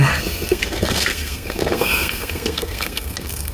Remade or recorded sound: remade